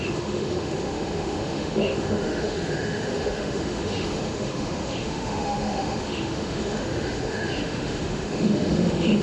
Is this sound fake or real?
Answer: fake